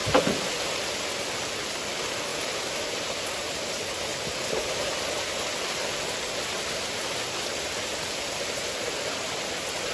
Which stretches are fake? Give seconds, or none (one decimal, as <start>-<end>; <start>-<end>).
2.3-3.3; 4.1-5.1